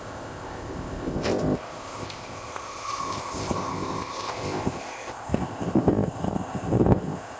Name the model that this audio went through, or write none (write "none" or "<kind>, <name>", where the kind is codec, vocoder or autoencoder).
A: codec, ZipCodec